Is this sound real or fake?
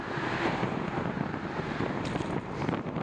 real